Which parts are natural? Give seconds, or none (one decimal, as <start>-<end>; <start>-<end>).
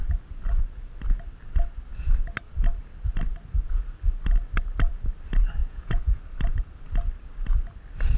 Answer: 0.0-5.6; 6.2-8.2